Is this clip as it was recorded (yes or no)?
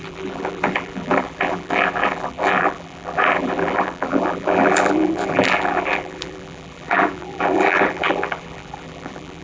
no